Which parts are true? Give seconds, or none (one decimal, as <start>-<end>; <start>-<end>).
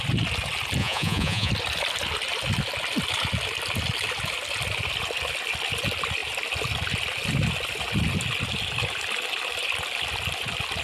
0.0-0.8; 1.5-10.8